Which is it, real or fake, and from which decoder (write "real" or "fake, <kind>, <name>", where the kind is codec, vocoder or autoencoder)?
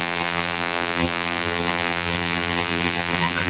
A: fake, vocoder, BigVGAN v2